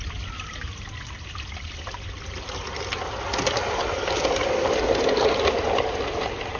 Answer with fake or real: real